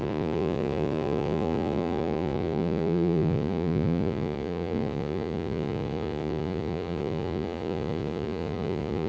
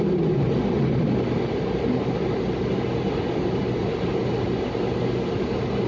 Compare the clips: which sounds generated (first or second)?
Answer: first